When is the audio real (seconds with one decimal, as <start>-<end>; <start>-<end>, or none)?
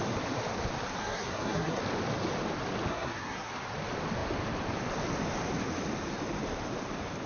0.0-1.0; 1.8-2.9; 3.5-7.3